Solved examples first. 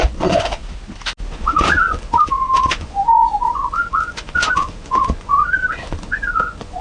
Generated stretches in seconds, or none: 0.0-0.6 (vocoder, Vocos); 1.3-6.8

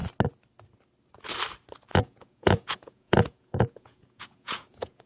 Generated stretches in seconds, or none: 1.9-5.1 (vocoder, Vocos)

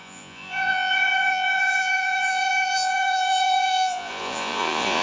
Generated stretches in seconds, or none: 0.0-5.0 (vocoder, Vocos)